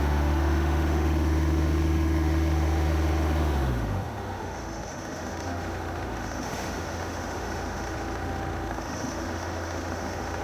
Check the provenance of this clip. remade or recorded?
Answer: remade